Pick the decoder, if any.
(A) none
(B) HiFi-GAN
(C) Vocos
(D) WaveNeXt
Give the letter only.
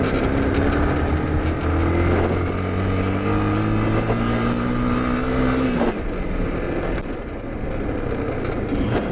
A